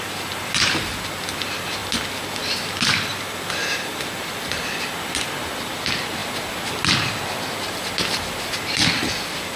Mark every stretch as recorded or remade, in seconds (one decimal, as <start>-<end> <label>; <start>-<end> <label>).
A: 0.0-9.6 recorded